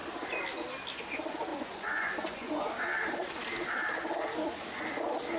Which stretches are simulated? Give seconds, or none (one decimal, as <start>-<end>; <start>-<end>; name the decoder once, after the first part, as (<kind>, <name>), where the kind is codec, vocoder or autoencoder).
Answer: 1.5-2.7 (vocoder, Vocos)